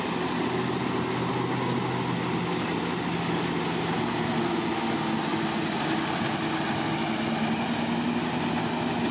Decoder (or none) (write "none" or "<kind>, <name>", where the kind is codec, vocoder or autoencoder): none